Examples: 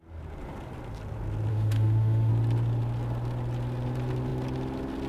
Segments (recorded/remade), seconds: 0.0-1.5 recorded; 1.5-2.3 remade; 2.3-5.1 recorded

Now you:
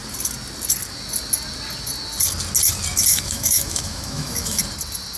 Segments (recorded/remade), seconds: 0.0-3.1 recorded; 3.1-4.6 remade; 4.6-5.2 recorded

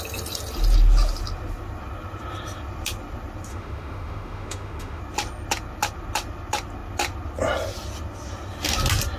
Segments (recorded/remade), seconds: 0.0-3.5 recorded; 3.5-5.0 remade; 5.0-9.2 recorded